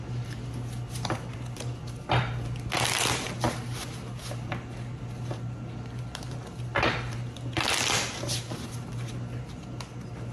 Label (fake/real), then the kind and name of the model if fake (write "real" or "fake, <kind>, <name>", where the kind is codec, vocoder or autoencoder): real